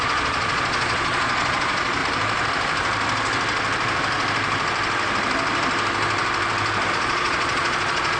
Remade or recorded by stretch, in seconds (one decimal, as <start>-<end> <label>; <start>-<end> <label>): 0.0-2.0 remade; 2.0-6.9 recorded; 6.9-8.2 remade

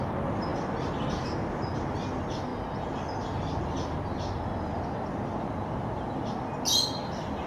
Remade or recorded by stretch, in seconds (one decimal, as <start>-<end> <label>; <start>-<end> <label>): 0.0-7.5 recorded

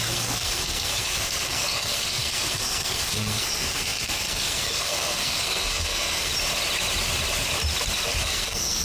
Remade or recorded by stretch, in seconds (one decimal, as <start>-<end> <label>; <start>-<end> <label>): 0.0-6.3 remade; 6.3-8.2 recorded; 8.2-8.8 remade

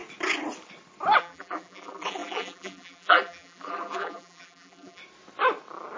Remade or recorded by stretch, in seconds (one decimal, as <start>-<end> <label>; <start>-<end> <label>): 0.0-1.2 recorded; 1.2-5.0 remade; 5.0-6.0 recorded

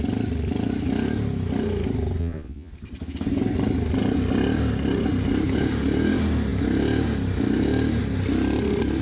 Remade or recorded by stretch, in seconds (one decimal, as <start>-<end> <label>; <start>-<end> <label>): 0.0-2.2 recorded; 2.2-2.7 remade; 2.7-9.0 recorded

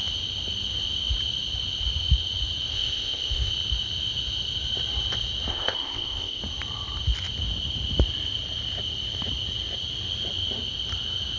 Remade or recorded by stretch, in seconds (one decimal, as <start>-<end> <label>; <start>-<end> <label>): 0.0-2.7 recorded; 2.7-3.5 remade; 3.5-5.5 recorded; 5.5-6.4 remade; 6.4-11.4 recorded